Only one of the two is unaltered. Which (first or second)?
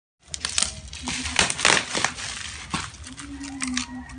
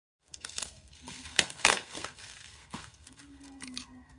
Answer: first